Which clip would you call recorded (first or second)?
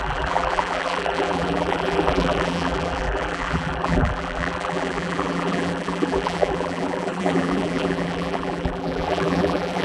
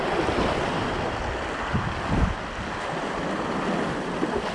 second